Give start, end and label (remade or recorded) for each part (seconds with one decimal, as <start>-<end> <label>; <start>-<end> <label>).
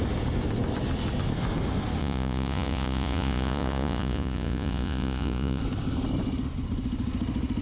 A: 0.0-2.0 recorded; 2.0-5.6 remade; 5.6-7.6 recorded